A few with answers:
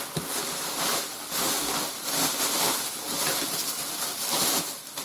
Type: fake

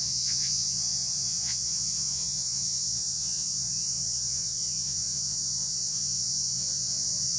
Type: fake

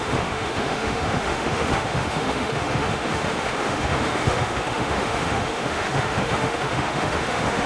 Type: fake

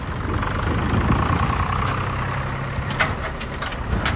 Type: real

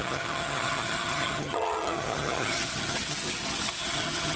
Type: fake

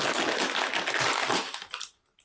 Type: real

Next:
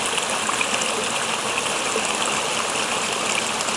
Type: real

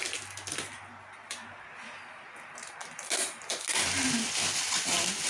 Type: real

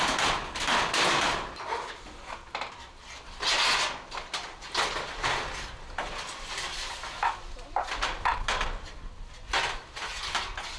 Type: real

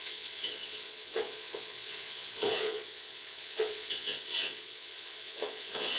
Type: fake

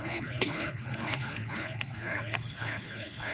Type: fake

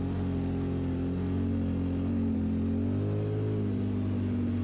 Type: real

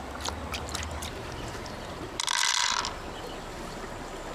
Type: real